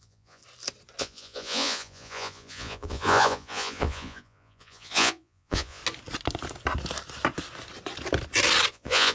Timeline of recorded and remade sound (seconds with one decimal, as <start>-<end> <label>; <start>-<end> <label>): 0.0-0.4 remade; 0.4-1.0 recorded; 1.0-5.8 remade; 5.8-8.7 recorded; 8.7-9.1 remade